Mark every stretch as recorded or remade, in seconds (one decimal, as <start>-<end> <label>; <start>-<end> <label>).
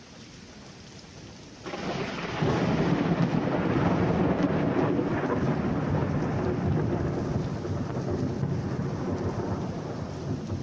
0.0-10.6 recorded